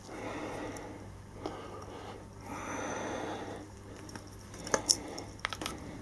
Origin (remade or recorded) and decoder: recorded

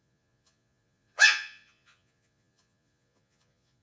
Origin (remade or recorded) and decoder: remade, vocoder, Vocos